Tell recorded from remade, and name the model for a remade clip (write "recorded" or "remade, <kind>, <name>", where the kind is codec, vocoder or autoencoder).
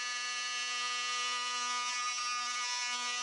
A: recorded